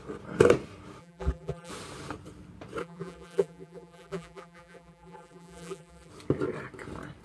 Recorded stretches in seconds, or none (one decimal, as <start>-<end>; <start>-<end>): 0.0-1.0; 1.7-2.8; 6.1-7.2